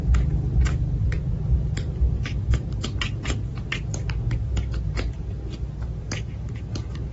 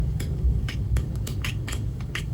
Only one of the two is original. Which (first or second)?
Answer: first